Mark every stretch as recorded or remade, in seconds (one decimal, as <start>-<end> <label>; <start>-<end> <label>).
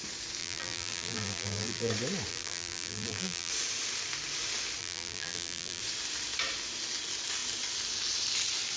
0.0-0.4 recorded; 0.4-1.9 remade; 1.9-2.3 recorded; 2.3-3.5 remade; 3.5-4.8 recorded; 4.8-5.8 remade; 5.8-8.8 recorded